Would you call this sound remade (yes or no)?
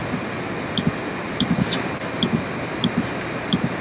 yes